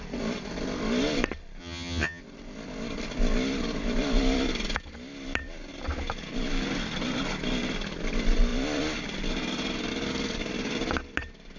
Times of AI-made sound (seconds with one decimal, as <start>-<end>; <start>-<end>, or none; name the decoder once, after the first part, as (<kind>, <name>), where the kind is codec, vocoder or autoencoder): 1.6-2.2 (vocoder, HiFi-GAN)